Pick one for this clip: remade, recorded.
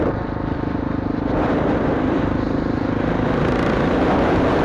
recorded